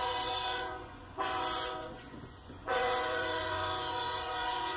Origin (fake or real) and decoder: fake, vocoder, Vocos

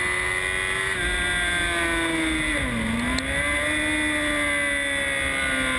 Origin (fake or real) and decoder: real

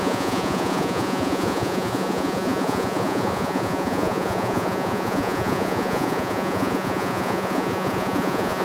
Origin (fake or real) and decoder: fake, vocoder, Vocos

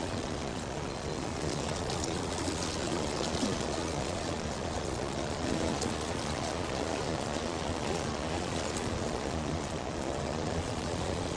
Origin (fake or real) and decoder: fake, vocoder, Vocos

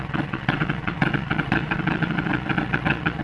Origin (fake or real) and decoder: fake, vocoder, Vocos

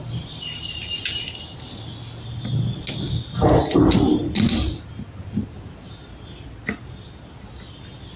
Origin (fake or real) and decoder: real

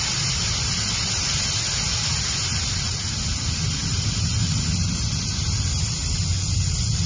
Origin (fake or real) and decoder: real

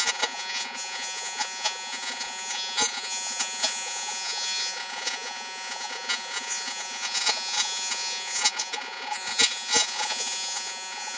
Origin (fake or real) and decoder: fake, vocoder, Vocos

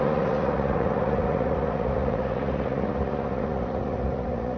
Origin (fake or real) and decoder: fake, vocoder, Vocos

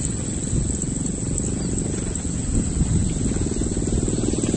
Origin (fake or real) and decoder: real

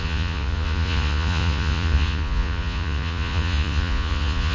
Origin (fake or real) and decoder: fake, vocoder, Vocos